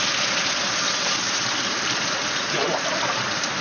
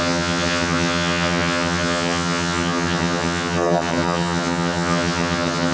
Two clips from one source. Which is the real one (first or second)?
first